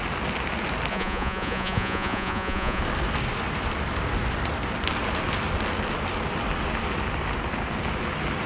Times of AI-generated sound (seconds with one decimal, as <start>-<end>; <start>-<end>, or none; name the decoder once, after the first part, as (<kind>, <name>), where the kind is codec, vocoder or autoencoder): 0.9-2.8 (vocoder, Vocos)